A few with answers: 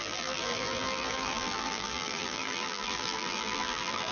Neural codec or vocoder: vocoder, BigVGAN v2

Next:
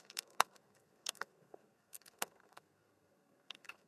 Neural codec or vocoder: codec, SNAC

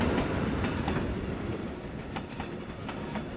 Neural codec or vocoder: vocoder, BigVGAN v2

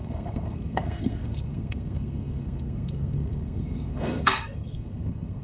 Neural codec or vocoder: codec, SNAC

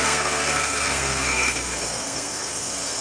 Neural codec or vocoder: codec, SNAC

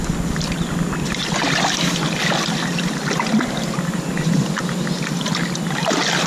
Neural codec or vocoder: none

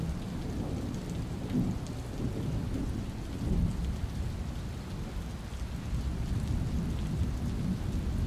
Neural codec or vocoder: none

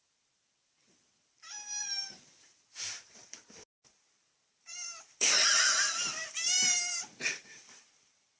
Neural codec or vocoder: vocoder, BigVGAN v2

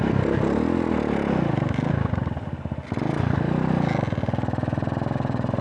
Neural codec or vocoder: none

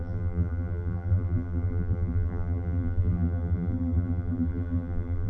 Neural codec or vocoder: vocoder, BigVGAN v2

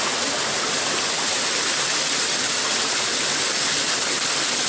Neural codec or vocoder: none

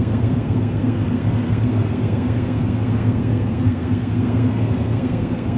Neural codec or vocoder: codec, SNAC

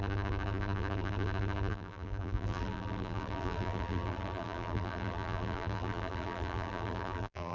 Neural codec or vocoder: vocoder, BigVGAN v2